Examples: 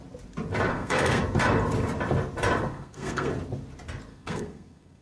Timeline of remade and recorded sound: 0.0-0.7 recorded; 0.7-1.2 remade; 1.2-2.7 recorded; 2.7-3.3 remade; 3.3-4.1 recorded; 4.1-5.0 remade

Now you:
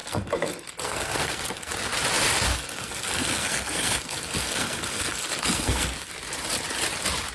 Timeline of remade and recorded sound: 0.0-1.7 remade; 1.7-2.5 recorded; 2.5-6.1 remade; 6.1-7.3 recorded

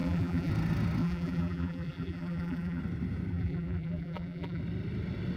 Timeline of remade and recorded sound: 0.0-0.5 remade; 0.5-1.0 recorded; 1.0-2.8 remade; 2.8-3.3 recorded; 3.3-4.6 remade; 4.6-5.4 recorded

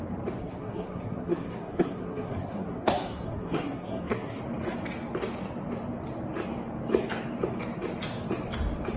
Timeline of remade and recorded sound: 0.0-0.4 recorded; 0.4-4.4 remade; 4.4-9.0 recorded

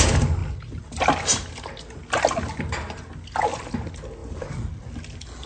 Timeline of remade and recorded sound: 0.0-4.2 recorded; 4.2-5.5 remade